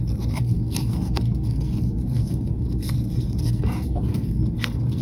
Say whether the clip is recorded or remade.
remade